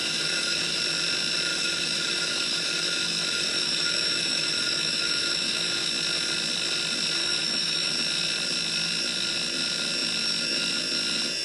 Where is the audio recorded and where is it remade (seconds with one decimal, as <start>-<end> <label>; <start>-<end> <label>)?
0.0-0.8 remade; 0.8-1.5 recorded; 1.5-5.9 remade; 5.9-7.2 recorded; 7.2-7.9 remade; 7.9-11.4 recorded